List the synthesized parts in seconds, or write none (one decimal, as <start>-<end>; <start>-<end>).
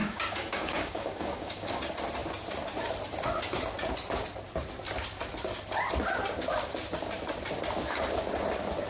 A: 0.0-1.8